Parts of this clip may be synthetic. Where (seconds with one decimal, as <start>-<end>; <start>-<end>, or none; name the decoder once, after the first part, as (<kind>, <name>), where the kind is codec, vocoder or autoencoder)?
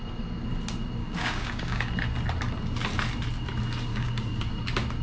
1.0-1.9 (codec, DAC); 3.9-4.5